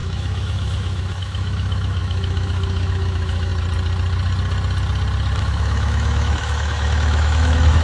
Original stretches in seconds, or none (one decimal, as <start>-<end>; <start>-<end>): 3.5-5.4